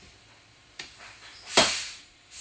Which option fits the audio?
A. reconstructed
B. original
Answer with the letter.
B